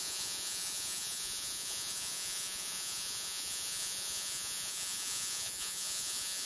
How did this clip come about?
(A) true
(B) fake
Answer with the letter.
B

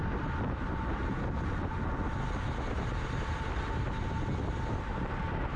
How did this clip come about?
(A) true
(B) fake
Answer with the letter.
A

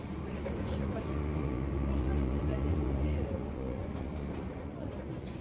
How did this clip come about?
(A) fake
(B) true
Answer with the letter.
A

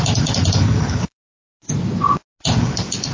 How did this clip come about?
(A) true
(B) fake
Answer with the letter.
A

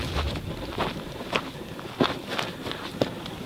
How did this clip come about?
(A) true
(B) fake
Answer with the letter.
A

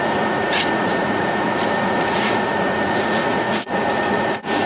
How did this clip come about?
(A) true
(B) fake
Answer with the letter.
B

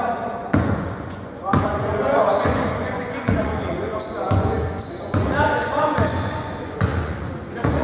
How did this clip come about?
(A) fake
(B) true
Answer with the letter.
A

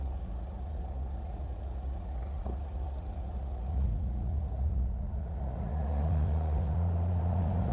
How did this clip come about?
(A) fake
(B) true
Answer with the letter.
A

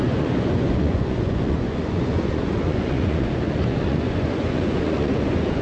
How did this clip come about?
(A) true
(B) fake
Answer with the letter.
B